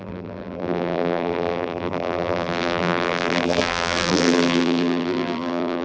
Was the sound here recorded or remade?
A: remade